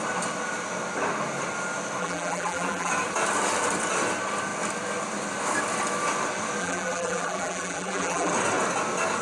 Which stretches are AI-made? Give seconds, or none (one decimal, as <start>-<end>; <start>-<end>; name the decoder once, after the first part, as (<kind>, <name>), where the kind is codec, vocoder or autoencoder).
2.0-2.9 (vocoder, BigVGAN v2); 6.6-8.3